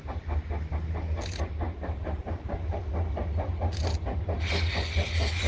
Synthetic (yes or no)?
no